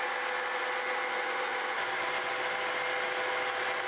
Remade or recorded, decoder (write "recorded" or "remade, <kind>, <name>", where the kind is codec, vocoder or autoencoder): recorded